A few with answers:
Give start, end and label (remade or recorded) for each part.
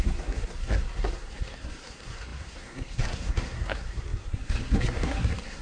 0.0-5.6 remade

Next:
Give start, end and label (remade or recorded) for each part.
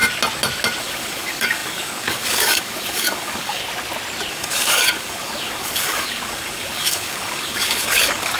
0.0-0.8 recorded; 0.8-3.6 remade; 3.6-4.3 recorded; 4.3-8.4 remade